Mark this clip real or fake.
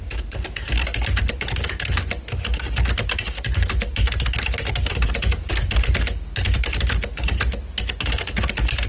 real